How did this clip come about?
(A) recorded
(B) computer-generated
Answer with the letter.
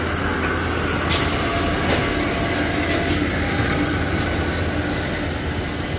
A